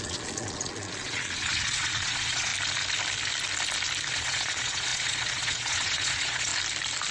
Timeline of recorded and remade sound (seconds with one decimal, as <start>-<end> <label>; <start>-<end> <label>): 0.0-2.5 remade; 2.5-4.1 recorded; 4.1-6.5 remade; 6.5-7.1 recorded

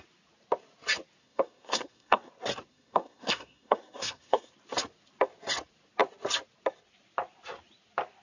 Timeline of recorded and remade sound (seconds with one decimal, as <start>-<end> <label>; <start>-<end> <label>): 0.0-1.2 recorded; 1.2-2.3 remade; 2.3-2.7 recorded; 2.7-4.5 remade; 4.5-8.2 recorded

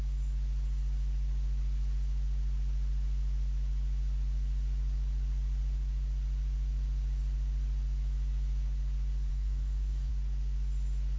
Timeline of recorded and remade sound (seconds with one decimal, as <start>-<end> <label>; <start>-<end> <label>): 0.0-9.3 recorded; 9.3-10.1 remade; 10.1-11.2 recorded

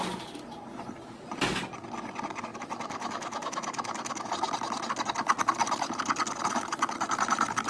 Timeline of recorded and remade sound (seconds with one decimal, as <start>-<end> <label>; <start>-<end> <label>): 0.0-2.5 recorded; 2.5-4.3 remade; 4.3-7.7 recorded

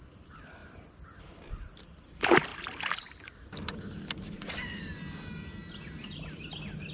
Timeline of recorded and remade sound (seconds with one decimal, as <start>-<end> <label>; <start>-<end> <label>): 0.0-6.9 recorded

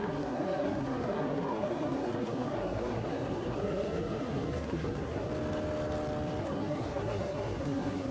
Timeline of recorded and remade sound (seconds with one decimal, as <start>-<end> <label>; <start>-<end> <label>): 0.0-5.3 remade; 5.3-6.4 recorded; 6.4-8.1 remade